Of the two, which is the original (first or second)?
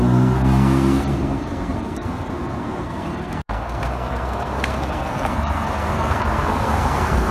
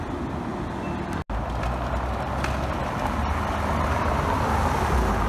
second